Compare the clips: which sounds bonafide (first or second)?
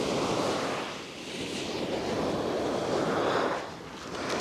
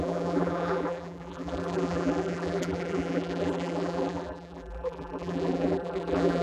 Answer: first